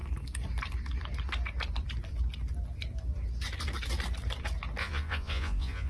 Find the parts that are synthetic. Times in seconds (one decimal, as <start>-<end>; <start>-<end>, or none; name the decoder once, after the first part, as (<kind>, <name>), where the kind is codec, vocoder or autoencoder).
4.8-5.9 (vocoder, Vocos)